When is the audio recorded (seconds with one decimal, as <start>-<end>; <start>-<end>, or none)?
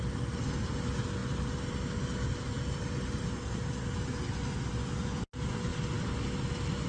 0.0-6.9